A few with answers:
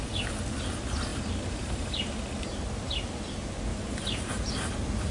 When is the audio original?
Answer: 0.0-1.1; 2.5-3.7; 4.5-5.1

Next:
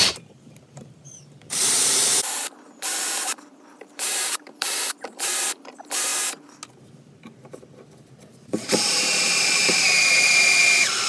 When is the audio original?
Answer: 2.1-3.7; 6.1-8.3